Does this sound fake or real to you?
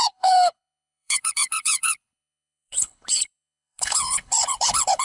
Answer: fake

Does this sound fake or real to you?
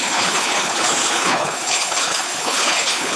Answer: fake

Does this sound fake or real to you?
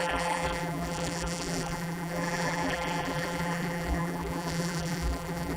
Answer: fake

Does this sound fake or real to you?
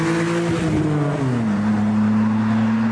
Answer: real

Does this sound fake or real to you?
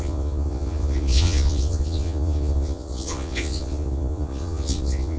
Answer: fake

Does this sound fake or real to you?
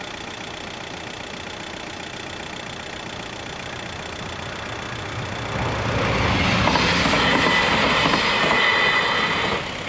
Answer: real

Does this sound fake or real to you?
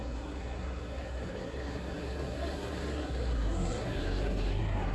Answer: fake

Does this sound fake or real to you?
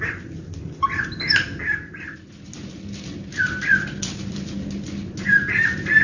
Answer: real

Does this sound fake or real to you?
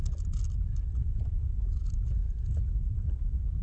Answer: real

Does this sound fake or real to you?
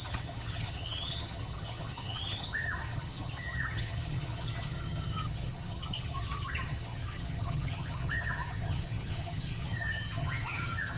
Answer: fake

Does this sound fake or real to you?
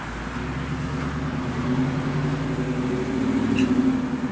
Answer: real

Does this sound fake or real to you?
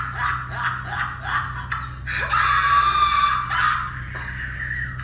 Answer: real